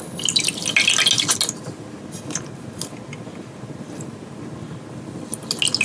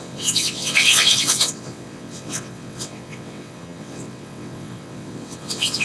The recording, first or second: first